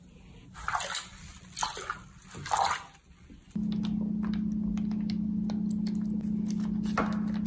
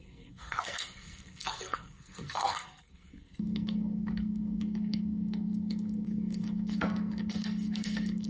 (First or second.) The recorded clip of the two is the first